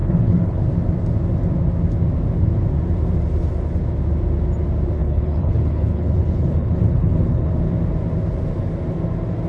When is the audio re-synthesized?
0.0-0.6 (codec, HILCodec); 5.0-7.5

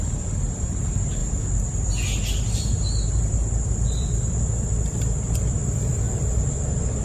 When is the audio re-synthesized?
0.0-1.2 (vocoder, BigVGAN v2); 3.2-7.0

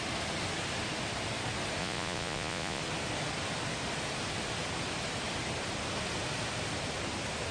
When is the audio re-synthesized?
1.8-2.8 (vocoder, Vocos)

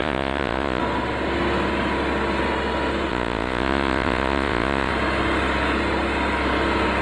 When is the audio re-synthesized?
0.0-0.8 (vocoder, Vocos); 3.1-4.9

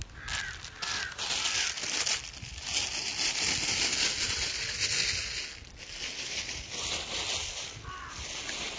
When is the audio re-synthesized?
none